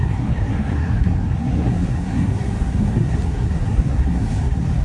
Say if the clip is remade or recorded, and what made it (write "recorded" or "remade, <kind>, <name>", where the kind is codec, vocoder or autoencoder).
remade, codec, SNAC